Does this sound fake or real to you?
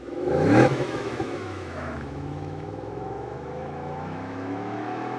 fake